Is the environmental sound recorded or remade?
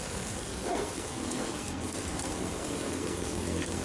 remade